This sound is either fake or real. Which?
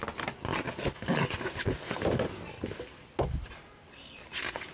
real